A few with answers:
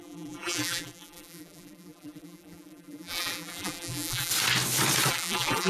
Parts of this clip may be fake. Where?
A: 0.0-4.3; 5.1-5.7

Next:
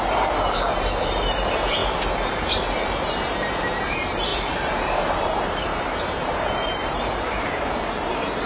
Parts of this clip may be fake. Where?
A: 0.0-8.5

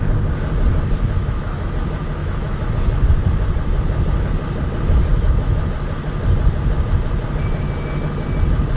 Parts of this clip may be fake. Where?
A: 1.2-1.7; 2.2-2.7; 5.1-5.7